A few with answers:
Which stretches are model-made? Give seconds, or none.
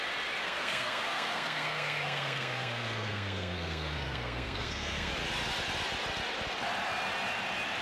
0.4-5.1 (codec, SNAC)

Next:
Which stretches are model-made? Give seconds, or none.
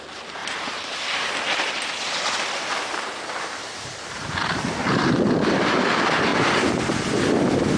0.4-1.3 (vocoder, BigVGAN v2); 3.6-4.8